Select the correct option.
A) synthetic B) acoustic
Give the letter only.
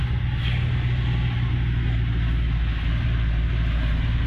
B